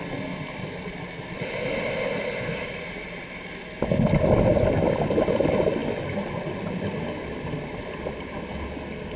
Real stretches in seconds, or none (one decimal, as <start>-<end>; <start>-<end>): 0.0-9.2